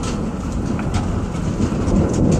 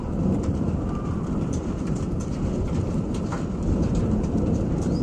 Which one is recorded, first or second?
first